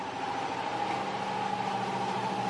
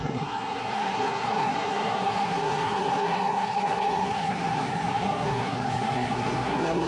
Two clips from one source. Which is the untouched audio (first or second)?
first